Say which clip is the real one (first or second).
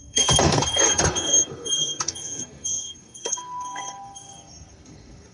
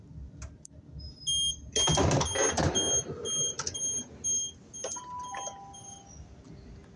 second